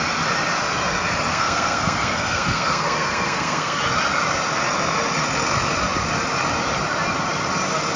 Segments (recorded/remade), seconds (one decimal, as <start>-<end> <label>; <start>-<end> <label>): 0.0-1.3 recorded; 1.3-3.8 remade; 3.8-8.0 recorded